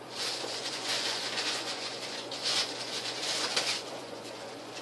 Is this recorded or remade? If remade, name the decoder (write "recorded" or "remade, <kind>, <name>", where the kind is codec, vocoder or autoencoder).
remade, vocoder, Vocos